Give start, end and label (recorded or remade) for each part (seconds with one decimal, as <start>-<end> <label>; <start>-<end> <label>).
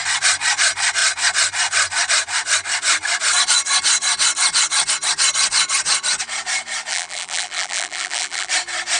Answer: 0.0-6.9 recorded; 6.9-8.5 remade; 8.5-9.0 recorded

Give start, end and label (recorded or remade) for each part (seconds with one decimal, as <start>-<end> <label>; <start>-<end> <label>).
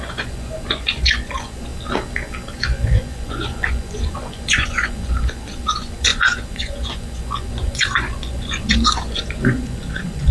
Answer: 0.0-1.7 remade; 1.7-2.5 recorded; 2.5-10.3 remade